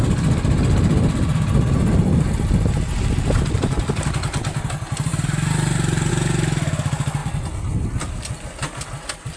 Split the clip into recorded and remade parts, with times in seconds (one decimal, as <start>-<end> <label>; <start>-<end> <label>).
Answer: 0.0-9.4 recorded